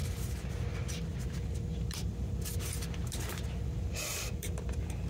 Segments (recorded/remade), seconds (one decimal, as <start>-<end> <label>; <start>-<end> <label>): 0.0-0.5 remade; 0.5-1.1 recorded; 1.1-2.1 remade; 2.1-3.0 recorded; 3.0-4.3 remade; 4.3-5.1 recorded